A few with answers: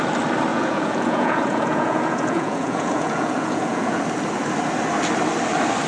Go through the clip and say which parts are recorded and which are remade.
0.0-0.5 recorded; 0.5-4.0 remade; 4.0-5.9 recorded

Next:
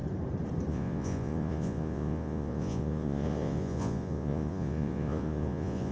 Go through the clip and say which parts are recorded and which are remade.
0.0-0.7 recorded; 0.7-5.9 remade

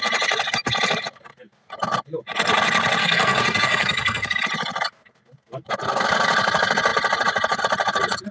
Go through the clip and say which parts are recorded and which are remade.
0.0-3.0 recorded; 3.0-4.4 remade; 4.4-8.3 recorded

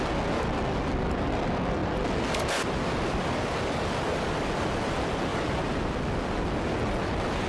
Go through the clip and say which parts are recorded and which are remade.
0.0-7.5 recorded

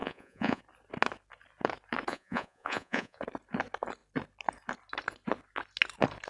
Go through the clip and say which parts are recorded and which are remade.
0.0-0.6 remade; 0.6-2.1 recorded; 2.1-3.2 remade; 3.2-6.3 recorded